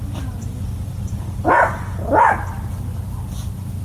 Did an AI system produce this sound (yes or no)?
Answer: no